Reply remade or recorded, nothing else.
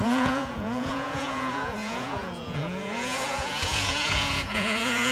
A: remade